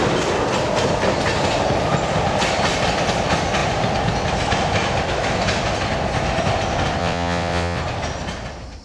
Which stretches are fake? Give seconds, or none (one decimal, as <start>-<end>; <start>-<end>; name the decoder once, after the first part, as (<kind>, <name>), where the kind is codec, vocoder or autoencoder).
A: 7.0-7.8 (vocoder, WaveNeXt)